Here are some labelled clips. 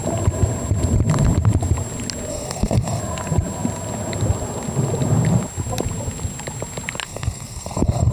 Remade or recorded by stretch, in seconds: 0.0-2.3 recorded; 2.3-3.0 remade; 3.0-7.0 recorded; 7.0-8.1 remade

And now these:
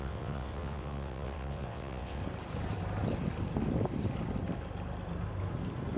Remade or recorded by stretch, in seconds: 0.0-2.2 remade; 2.2-6.0 recorded

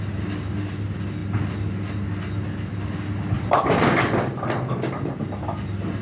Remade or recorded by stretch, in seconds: 0.0-6.0 recorded

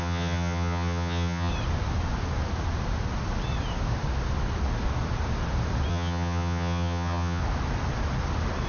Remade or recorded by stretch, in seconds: 0.0-1.5 remade; 1.5-5.9 recorded; 5.9-7.4 remade; 7.4-8.7 recorded

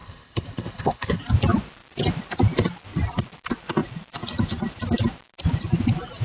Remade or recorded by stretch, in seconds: 0.0-1.2 remade; 1.2-6.2 recorded

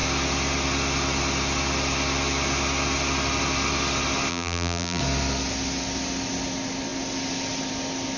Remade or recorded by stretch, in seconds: 0.0-4.3 recorded; 4.3-5.0 remade; 5.0-8.2 recorded